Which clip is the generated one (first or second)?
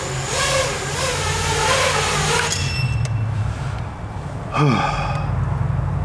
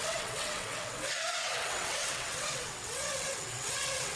second